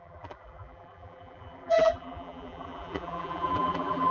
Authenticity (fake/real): fake